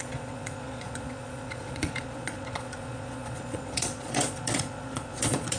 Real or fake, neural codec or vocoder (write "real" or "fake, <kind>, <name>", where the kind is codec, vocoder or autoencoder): fake, vocoder, Vocos